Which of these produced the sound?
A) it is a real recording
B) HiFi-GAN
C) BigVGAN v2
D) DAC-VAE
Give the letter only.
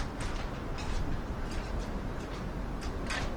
A